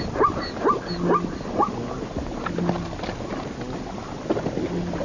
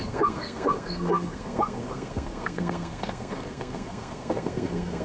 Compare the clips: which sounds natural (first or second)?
first